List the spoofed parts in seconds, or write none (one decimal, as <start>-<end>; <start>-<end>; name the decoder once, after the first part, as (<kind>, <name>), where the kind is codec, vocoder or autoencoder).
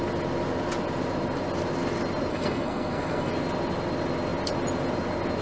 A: 2.3-3.3 (codec, SNAC)